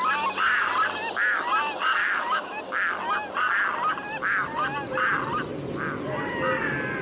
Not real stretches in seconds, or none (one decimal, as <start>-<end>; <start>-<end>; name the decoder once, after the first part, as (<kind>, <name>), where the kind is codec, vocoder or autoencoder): 2.0-2.6 (autoencoder, DAC-VAE)